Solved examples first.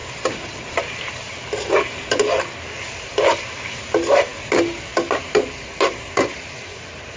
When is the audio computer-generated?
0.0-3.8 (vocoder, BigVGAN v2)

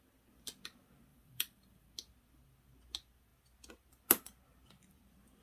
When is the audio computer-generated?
1.1-1.9 (vocoder, BigVGAN v2)

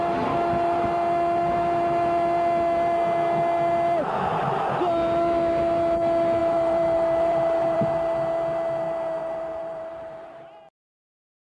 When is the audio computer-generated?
6.4-7.8 (vocoder, BigVGAN v2); 9.2-10.7

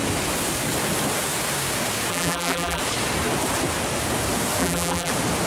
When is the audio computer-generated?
2.1-2.8 (vocoder, BigVGAN v2); 4.6-5.1

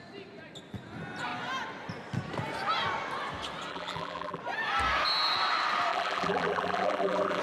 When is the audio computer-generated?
3.7-4.4 (vocoder, BigVGAN v2); 5.9-7.4

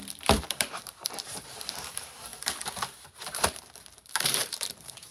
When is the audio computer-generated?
0.0-5.1 (vocoder, BigVGAN v2)